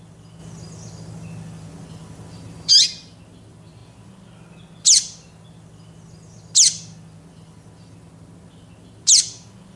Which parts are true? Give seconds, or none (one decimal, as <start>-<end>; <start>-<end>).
0.0-0.4; 2.7-9.8